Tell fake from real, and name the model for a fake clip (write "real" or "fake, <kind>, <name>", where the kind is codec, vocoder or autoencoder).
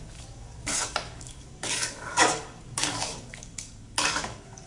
fake, codec, DAC